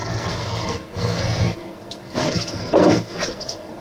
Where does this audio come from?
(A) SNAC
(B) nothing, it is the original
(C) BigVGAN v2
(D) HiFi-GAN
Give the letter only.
A